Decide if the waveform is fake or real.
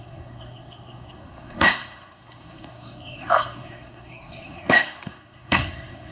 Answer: fake